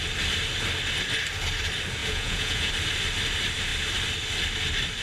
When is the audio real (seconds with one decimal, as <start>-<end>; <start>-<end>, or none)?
0.0-2.0; 2.7-5.0

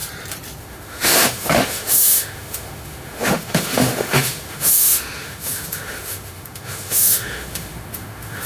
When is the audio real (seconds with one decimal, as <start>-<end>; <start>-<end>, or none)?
0.0-0.6

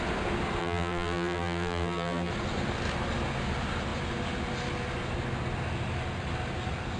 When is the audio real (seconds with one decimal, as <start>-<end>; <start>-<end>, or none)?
0.0-0.6; 2.3-7.0

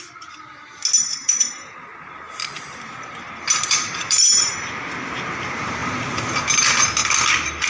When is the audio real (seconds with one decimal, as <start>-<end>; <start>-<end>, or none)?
0.0-1.2; 4.5-5.8; 6.4-7.7

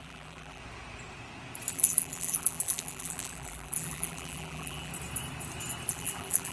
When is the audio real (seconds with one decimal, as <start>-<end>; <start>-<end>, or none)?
0.6-1.7; 4.9-5.9

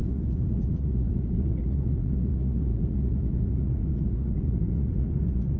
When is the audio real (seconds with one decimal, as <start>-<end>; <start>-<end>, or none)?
none

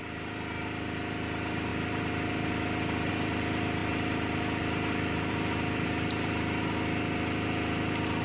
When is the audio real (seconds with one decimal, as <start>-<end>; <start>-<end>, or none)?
0.0-8.2